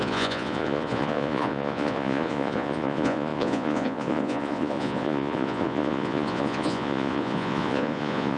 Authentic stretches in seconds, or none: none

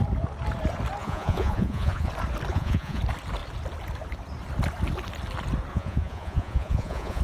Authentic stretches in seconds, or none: 0.0-1.0; 2.1-2.5; 3.0-5.7

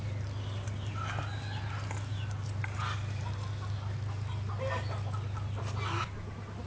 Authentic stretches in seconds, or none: 0.0-6.7

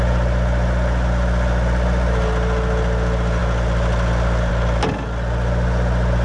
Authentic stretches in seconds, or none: 0.0-6.2

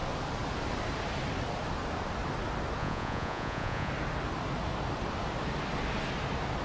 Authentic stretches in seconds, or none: 0.0-2.8; 3.9-6.6